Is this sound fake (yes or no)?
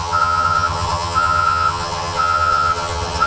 yes